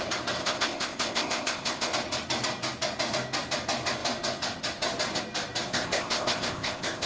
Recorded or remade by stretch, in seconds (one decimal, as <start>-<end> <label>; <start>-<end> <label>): 0.0-0.4 recorded; 0.4-1.9 remade; 1.9-5.7 recorded; 5.7-7.1 remade